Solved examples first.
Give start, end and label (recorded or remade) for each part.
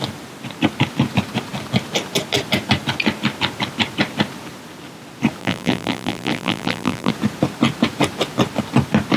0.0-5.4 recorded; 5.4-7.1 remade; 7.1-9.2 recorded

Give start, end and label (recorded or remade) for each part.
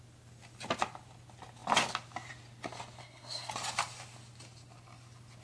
0.0-3.0 recorded; 3.0-3.5 remade; 3.5-5.4 recorded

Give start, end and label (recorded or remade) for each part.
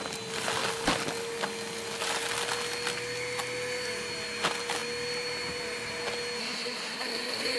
0.0-6.4 recorded; 6.4-7.6 remade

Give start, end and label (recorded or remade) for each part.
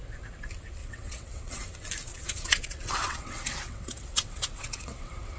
0.0-0.8 recorded; 0.8-1.6 remade; 1.6-2.1 recorded; 2.1-5.4 remade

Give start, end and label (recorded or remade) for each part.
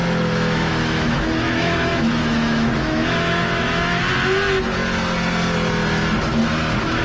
0.0-4.0 remade; 4.0-6.4 recorded; 6.4-7.0 remade